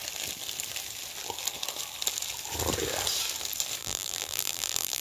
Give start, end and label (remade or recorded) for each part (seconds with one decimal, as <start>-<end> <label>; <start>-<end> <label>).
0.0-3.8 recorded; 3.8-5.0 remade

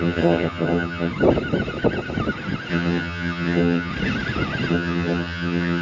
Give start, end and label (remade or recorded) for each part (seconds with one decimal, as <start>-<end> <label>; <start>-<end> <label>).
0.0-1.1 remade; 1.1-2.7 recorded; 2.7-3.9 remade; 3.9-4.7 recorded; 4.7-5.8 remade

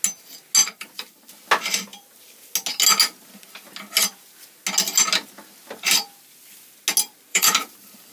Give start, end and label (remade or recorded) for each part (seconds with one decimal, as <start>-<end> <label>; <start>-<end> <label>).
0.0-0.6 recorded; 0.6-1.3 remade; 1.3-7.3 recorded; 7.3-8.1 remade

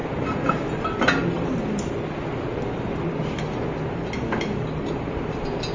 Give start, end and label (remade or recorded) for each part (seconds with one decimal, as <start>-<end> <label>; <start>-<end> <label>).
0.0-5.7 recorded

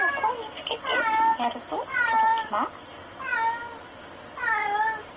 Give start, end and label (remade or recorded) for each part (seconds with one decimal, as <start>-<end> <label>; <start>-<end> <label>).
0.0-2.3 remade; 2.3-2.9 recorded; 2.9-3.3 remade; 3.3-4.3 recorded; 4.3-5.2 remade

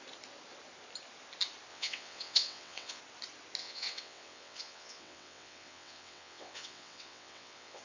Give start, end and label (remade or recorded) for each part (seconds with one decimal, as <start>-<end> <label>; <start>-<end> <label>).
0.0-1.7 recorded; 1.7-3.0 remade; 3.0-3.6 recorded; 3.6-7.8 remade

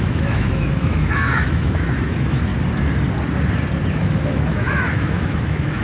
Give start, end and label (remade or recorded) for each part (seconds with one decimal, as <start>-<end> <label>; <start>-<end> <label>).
0.0-2.5 remade; 2.5-3.9 recorded; 3.9-5.8 remade